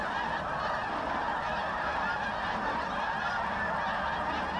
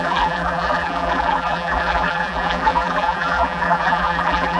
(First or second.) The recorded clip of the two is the first